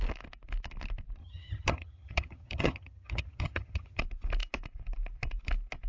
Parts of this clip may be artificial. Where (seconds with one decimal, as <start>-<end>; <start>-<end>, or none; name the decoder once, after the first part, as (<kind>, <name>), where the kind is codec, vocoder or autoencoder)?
1.2-4.0 (vocoder, HiFi-GAN)

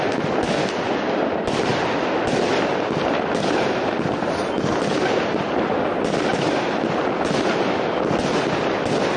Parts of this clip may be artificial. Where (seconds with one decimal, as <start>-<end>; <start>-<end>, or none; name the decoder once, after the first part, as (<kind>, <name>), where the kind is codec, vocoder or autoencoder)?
none